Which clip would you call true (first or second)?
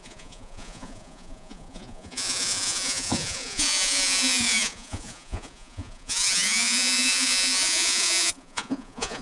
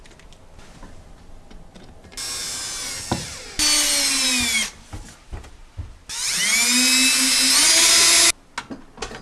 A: second